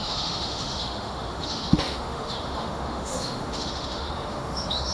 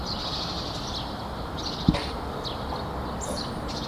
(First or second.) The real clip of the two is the second